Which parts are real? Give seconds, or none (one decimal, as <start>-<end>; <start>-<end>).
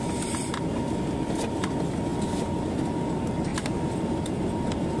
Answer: 0.0-3.5; 4.5-5.0